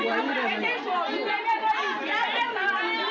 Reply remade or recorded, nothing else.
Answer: recorded